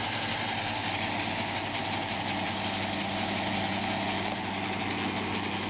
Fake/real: real